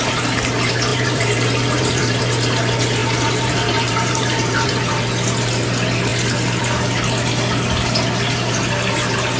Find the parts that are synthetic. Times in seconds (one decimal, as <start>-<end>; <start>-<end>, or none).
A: 0.9-2.2; 3.0-4.9